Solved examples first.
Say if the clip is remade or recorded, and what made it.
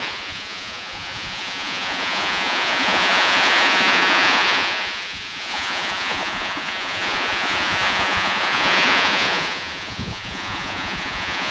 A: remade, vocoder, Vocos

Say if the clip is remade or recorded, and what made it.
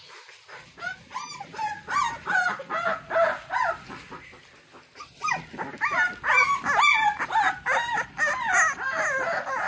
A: recorded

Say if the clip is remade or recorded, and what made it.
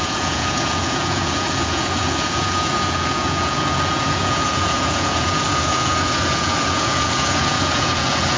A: remade, vocoder, Vocos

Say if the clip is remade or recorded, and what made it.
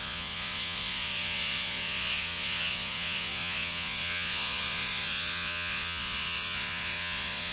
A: remade, vocoder, Vocos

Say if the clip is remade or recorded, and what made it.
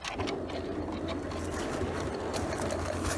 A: recorded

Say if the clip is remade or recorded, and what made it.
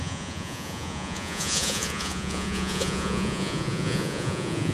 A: remade, vocoder, Vocos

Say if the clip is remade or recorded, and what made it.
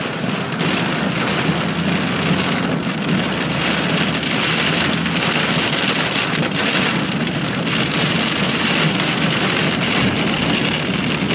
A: recorded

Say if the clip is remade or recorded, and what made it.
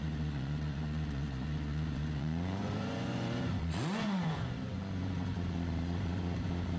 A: remade, vocoder, Vocos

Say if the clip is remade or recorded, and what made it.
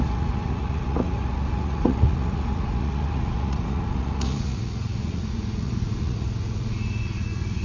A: remade, vocoder, Vocos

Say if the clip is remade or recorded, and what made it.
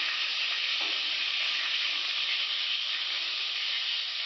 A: recorded